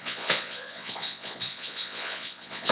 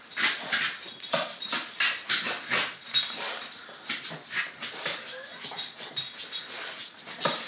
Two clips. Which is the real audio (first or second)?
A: second